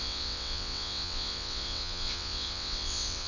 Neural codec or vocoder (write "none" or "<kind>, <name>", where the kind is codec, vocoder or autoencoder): vocoder, WaveNeXt